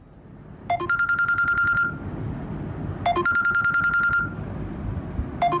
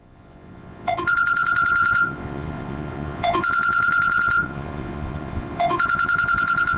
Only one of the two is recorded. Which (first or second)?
first